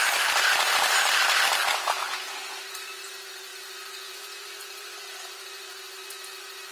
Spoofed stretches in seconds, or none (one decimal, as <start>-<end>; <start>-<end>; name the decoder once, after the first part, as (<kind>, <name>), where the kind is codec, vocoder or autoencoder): none

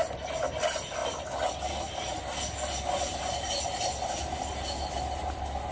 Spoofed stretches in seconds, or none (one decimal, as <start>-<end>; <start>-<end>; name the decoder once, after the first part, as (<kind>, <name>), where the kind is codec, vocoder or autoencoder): none

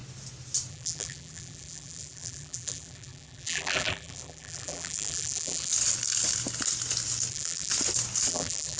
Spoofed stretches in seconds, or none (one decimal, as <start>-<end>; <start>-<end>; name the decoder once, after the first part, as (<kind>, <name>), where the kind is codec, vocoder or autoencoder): 0.7-5.7 (vocoder, BigVGAN v2); 7.3-7.7; 8.3-8.8

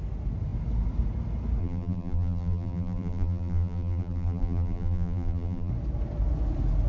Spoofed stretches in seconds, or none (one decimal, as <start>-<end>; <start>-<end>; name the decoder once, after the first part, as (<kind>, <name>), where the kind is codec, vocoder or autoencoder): 1.6-5.7 (vocoder, BigVGAN v2)

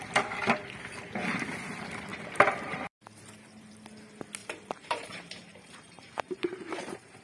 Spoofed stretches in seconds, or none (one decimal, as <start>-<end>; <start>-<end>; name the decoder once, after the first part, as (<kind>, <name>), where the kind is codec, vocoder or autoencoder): 2.1-3.7 (vocoder, BigVGAN v2); 4.4-7.2

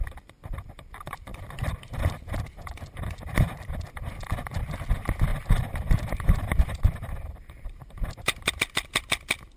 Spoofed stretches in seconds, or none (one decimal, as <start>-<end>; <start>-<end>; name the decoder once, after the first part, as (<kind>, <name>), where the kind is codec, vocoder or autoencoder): 5.3-8.5 (vocoder, BigVGAN v2)